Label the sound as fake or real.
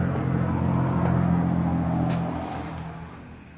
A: real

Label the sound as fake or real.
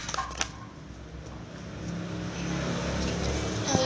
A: real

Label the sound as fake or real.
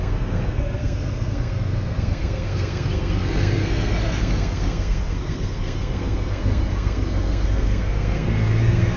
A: fake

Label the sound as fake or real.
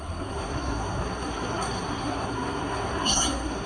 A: fake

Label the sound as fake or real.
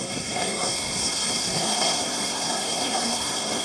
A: fake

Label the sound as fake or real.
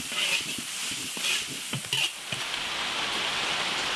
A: real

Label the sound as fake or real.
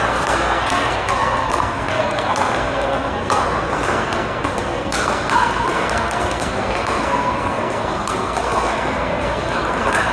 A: fake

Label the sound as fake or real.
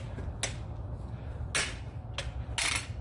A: real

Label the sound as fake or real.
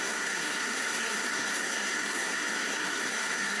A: fake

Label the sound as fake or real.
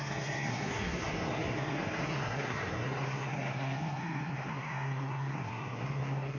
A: fake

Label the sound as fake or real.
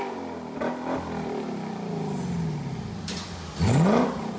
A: real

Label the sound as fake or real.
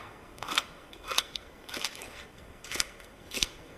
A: fake